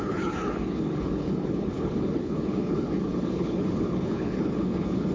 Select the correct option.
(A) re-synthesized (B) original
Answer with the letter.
A